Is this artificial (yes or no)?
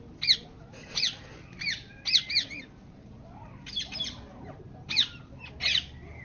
no